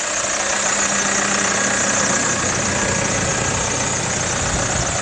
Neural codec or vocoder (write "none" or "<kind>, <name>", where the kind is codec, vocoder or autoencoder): none